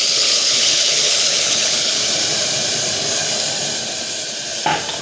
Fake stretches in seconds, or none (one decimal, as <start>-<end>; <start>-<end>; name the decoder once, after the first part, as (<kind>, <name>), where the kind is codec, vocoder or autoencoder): 0.0-2.0 (codec, HILCodec)